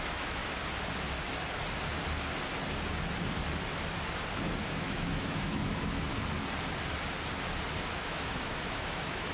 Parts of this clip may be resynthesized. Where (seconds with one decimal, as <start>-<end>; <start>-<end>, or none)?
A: 0.0-0.4; 4.6-6.1; 7.9-9.3